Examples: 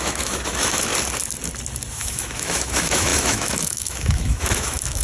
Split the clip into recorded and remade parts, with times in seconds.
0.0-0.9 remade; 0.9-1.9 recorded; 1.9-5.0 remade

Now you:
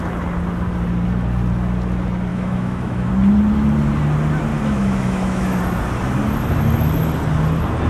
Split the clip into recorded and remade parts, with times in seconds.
0.0-2.3 recorded; 2.3-3.1 remade; 3.1-4.5 recorded; 4.5-5.6 remade; 5.6-7.9 recorded

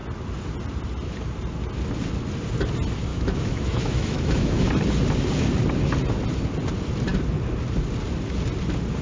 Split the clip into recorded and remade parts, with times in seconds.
0.0-3.1 recorded; 3.1-4.7 remade; 4.7-9.0 recorded

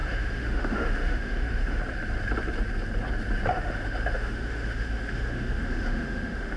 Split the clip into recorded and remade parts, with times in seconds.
0.0-1.8 remade; 1.8-3.5 recorded; 3.5-6.6 remade

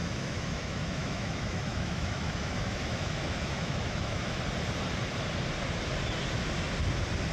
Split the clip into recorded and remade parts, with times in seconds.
0.0-4.4 remade; 4.4-7.3 recorded

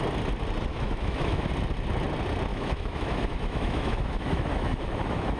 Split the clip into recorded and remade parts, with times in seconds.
0.0-0.7 recorded; 0.7-1.5 remade; 1.5-2.5 recorded; 2.5-5.4 remade

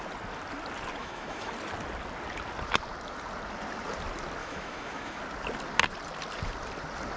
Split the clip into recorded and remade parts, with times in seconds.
0.0-1.0 recorded; 1.0-1.5 remade; 1.5-4.4 recorded; 4.4-5.2 remade; 5.2-7.2 recorded

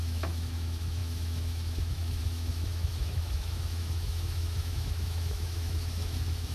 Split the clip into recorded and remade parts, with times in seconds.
0.0-6.5 remade